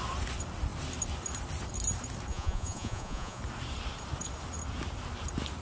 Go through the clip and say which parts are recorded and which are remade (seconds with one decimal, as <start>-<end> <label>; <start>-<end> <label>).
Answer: 0.0-2.3 recorded; 2.3-3.4 remade; 3.4-5.6 recorded